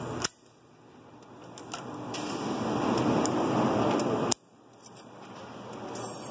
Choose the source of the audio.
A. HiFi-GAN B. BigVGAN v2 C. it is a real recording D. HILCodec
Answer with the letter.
C